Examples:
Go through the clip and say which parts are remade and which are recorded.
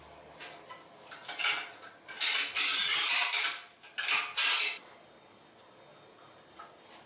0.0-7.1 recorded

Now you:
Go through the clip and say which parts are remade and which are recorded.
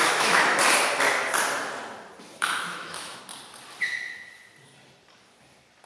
0.0-0.6 remade; 0.6-2.3 recorded; 2.3-3.2 remade; 3.2-5.9 recorded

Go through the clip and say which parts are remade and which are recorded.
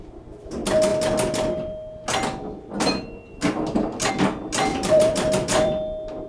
0.0-4.7 recorded; 4.7-5.7 remade; 5.7-6.3 recorded